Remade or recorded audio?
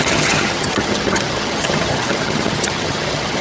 remade